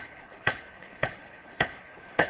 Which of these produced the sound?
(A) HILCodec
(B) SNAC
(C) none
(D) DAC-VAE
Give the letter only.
A